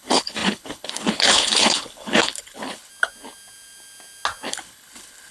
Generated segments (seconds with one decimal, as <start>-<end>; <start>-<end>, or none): 0.0-2.9; 4.5-5.3